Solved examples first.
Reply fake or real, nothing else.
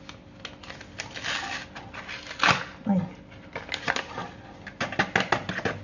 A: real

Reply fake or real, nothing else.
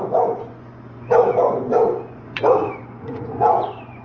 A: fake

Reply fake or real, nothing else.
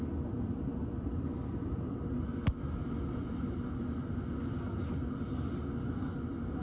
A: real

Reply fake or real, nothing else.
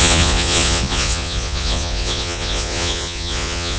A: fake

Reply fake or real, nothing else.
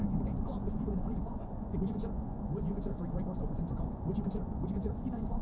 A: fake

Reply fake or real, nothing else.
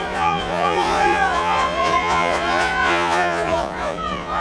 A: fake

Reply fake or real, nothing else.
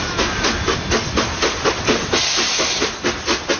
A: real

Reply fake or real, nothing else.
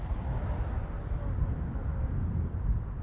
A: real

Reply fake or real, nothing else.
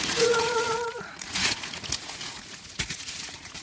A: fake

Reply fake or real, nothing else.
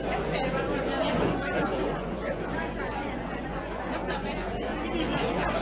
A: fake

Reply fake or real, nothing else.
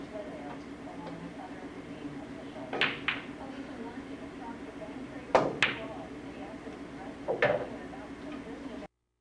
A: real